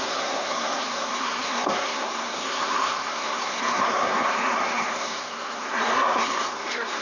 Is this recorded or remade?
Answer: remade